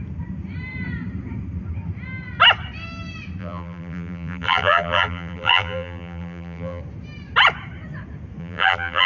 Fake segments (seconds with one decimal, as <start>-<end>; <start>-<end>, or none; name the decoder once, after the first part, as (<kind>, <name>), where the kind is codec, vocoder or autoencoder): 3.4-6.8 (vocoder, BigVGAN v2); 8.4-9.1